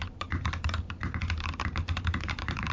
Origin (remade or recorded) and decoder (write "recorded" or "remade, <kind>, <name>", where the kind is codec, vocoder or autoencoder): remade, vocoder, BigVGAN v2